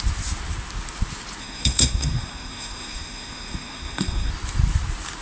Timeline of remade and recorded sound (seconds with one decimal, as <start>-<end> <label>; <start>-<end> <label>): 0.0-1.4 recorded; 1.4-4.3 remade; 4.3-5.2 recorded